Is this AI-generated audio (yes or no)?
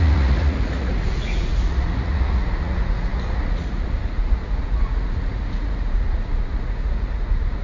yes